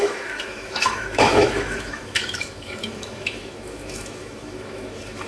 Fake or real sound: fake